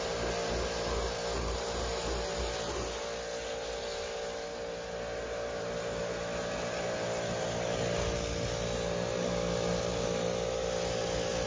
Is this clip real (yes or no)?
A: yes